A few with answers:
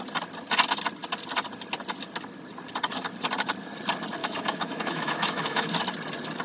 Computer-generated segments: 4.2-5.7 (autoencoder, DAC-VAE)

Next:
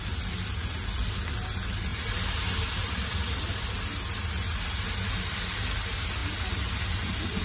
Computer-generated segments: none